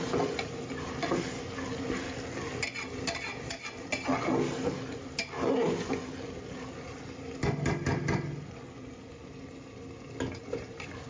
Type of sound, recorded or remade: recorded